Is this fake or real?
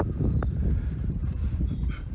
fake